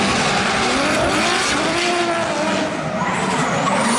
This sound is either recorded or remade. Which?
recorded